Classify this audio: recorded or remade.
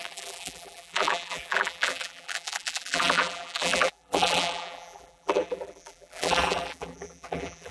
remade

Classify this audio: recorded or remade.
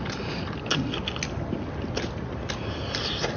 recorded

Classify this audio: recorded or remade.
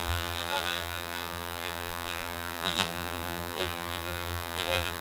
remade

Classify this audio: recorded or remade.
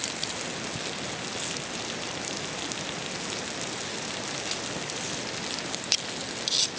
recorded